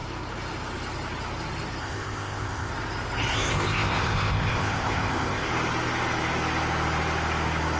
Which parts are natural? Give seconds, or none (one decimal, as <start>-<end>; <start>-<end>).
0.0-1.8; 2.7-3.3; 5.5-7.8